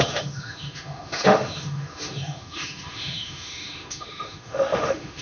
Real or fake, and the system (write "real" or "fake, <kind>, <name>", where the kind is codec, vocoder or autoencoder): fake, autoencoder, DAC-VAE